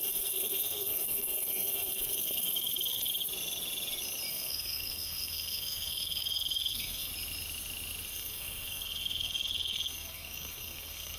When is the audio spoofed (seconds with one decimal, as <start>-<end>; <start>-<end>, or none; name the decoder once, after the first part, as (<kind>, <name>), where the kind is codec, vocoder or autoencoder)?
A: 0.0-3.1 (codec, SNAC); 4.3-7.1; 8.1-11.2